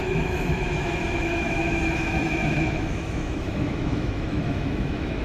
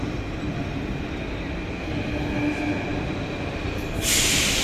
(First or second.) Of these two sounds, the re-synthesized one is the first